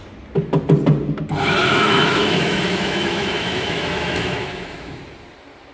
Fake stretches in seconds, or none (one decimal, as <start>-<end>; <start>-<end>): 1.6-5.0